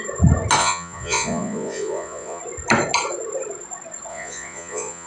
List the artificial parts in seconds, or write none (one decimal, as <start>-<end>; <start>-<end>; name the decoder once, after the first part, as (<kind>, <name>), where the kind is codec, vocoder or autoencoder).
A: 0.6-2.4 (vocoder, Vocos); 4.1-5.1